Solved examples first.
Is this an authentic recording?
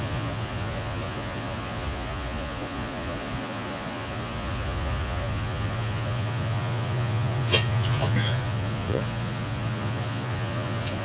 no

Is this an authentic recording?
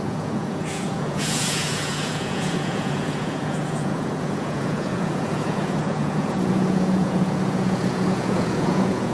no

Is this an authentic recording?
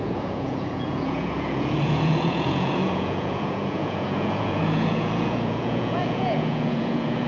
no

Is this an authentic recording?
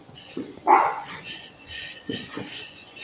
no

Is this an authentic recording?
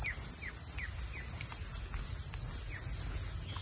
yes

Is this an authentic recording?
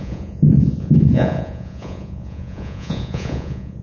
no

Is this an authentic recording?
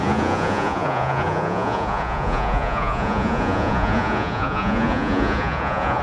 no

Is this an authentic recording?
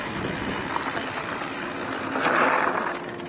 yes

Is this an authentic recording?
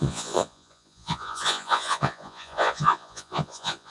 no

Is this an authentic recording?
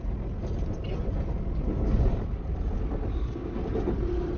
yes